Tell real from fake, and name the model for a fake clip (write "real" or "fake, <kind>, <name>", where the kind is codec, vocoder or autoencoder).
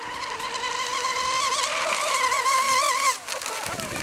real